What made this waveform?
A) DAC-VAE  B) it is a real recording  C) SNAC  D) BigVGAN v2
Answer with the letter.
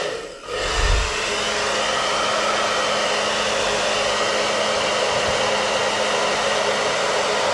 B